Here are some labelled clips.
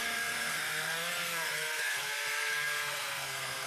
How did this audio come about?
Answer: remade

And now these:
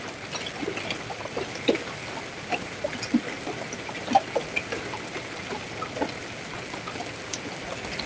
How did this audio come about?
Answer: recorded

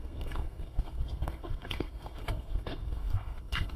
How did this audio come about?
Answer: remade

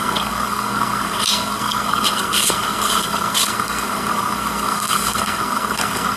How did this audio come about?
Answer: remade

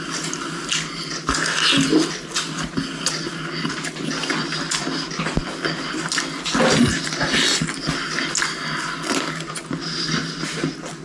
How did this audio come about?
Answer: recorded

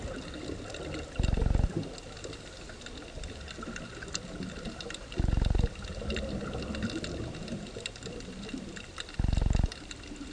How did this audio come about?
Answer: recorded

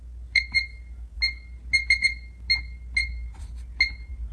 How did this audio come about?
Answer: recorded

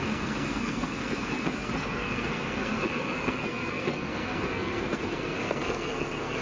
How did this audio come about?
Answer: remade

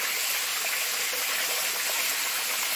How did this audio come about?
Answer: recorded